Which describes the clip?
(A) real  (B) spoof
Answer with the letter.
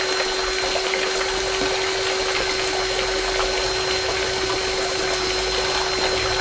A